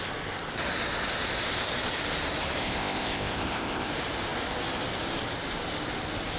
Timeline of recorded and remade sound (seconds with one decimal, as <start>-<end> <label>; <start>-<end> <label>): 0.0-2.6 recorded; 2.6-3.9 remade; 3.9-6.4 recorded